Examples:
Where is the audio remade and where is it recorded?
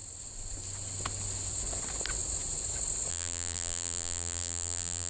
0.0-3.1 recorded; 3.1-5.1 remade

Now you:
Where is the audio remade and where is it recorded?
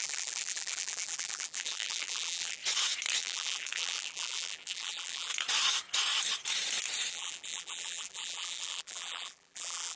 0.0-2.6 remade; 2.6-3.2 recorded; 3.2-5.3 remade; 5.3-7.1 recorded; 7.1-10.0 remade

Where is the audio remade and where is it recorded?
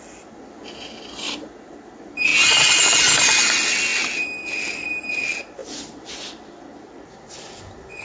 0.0-3.9 recorded; 3.9-4.4 remade; 4.4-5.6 recorded; 5.6-6.1 remade; 6.1-8.0 recorded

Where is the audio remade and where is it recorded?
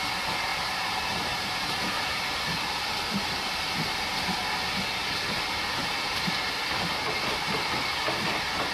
0.0-0.5 recorded; 0.5-4.3 remade; 4.3-5.8 recorded; 5.8-6.3 remade; 6.3-8.7 recorded